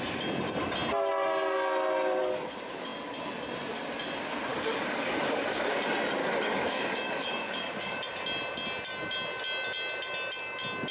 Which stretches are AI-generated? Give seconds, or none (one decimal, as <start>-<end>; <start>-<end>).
4.5-5.7; 6.2-8.0